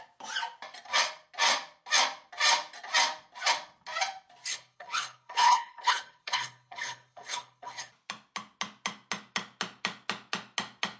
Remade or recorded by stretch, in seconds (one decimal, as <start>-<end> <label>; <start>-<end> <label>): 0.0-4.5 recorded; 4.5-7.9 remade; 7.9-11.0 recorded